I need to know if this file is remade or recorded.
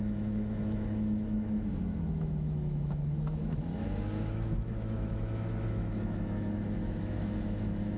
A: remade